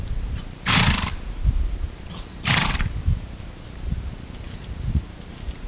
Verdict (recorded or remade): remade